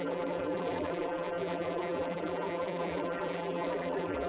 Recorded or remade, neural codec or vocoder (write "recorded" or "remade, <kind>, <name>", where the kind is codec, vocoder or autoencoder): remade, vocoder, BigVGAN v2